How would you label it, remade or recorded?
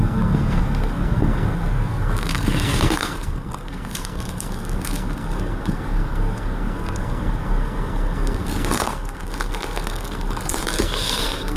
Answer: remade